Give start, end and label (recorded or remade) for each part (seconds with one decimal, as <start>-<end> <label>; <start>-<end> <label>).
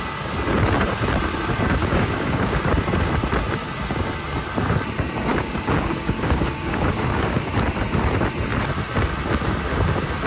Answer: 0.0-1.8 recorded; 1.8-2.7 remade; 2.7-5.3 recorded; 5.3-7.5 remade; 7.5-10.3 recorded